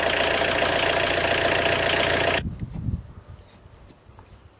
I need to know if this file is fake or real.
real